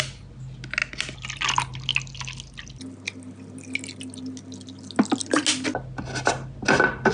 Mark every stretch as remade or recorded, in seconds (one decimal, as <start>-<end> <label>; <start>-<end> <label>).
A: 0.0-7.1 recorded